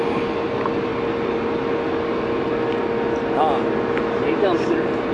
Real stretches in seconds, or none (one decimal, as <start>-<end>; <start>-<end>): 0.0-5.1